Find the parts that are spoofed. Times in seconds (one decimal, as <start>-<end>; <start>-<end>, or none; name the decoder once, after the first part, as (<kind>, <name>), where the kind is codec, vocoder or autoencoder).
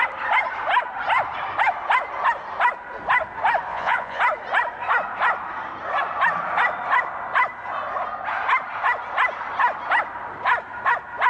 3.7-4.2 (vocoder, Vocos)